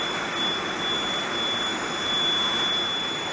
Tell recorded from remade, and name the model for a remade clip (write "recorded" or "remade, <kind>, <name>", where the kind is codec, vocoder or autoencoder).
recorded